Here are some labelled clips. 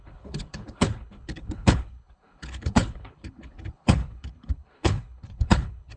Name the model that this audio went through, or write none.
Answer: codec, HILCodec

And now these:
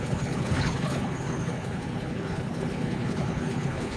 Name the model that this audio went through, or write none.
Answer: codec, HILCodec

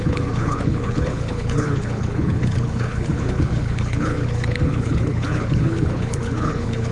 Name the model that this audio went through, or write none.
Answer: codec, HILCodec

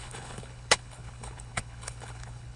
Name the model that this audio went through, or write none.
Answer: codec, HILCodec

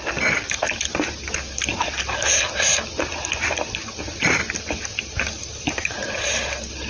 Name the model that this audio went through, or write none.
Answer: none